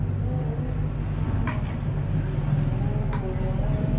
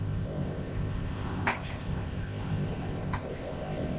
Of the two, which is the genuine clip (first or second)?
first